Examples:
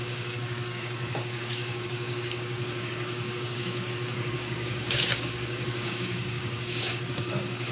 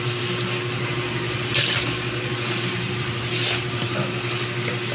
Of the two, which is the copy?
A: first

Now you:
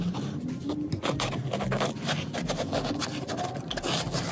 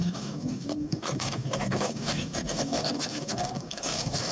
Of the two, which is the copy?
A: second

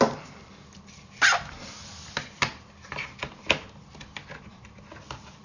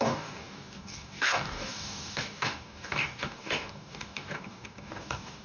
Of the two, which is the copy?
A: second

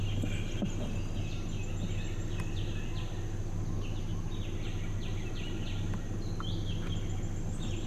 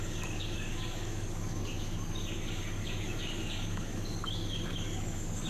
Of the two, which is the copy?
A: second